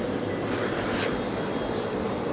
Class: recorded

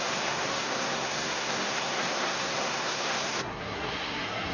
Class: remade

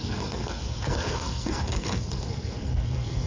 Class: remade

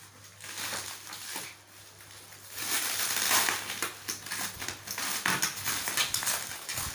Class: recorded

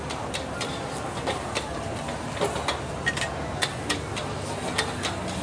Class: recorded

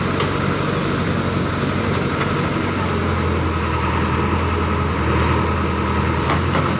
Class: recorded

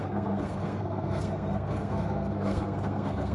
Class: remade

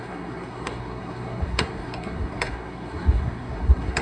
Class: remade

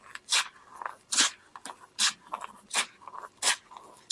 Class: recorded